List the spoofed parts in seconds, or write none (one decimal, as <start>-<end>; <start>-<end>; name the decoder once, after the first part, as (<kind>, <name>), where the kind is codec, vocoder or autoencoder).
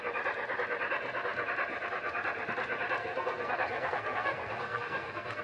3.0-5.4 (codec, SNAC)